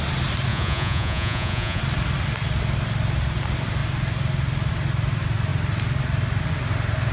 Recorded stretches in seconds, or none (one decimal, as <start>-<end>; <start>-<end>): 0.0-0.5; 1.8-7.1